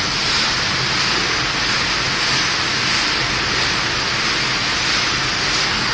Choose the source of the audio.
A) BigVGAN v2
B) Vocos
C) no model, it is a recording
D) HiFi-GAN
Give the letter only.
C